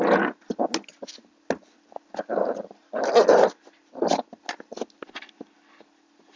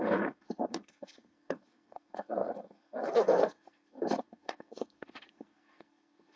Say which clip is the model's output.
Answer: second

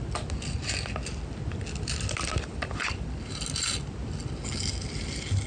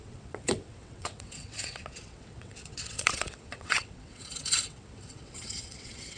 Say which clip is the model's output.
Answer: second